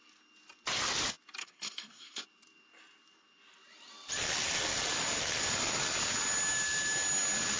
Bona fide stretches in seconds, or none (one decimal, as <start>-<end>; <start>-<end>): 0.0-1.4; 2.2-7.6